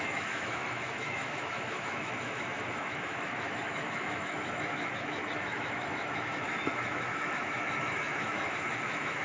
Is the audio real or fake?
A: fake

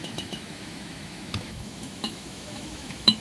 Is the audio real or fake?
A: fake